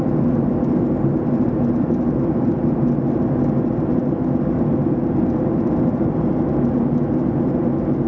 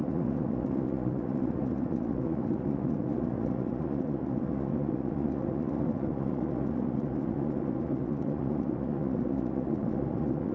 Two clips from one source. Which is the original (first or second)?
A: first